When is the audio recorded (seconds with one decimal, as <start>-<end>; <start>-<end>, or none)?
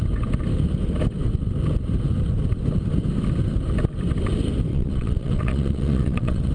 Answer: 0.0-4.7